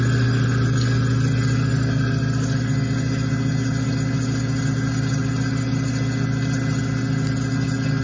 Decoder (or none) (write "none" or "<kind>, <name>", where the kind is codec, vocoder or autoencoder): none